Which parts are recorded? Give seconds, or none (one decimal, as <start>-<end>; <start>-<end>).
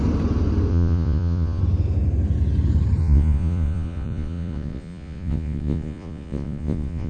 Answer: 0.0-0.7; 1.6-3.0